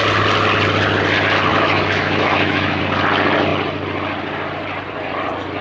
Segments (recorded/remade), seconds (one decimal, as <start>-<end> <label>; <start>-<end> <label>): 0.0-1.5 recorded; 1.5-2.8 remade; 2.8-5.6 recorded